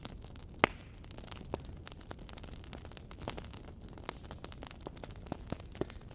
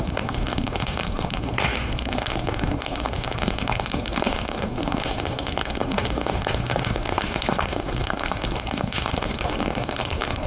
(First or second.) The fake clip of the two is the second